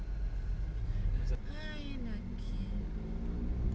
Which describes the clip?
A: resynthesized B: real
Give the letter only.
B